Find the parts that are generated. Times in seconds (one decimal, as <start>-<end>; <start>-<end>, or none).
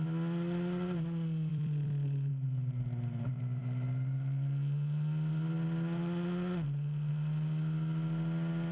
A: 1.5-2.3